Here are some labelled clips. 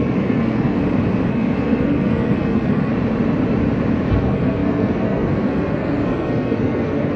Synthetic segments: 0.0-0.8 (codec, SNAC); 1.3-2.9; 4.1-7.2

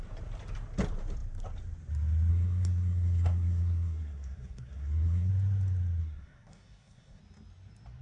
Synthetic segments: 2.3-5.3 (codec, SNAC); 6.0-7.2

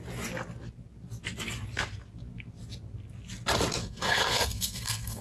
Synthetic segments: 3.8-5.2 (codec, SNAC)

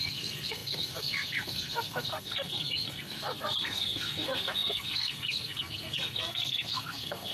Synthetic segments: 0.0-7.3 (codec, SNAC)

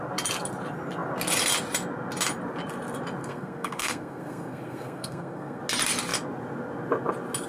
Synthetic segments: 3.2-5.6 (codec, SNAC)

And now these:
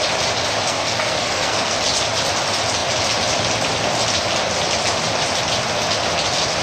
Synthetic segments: 0.6-1.8 (codec, SNAC)

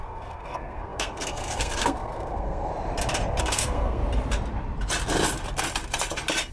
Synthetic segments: 0.0-2.7 (codec, SNAC); 3.4-4.0

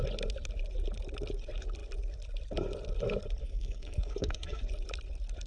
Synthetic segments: 3.4-4.6 (codec, SNAC)